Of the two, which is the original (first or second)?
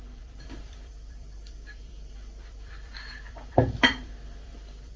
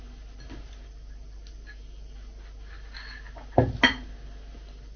second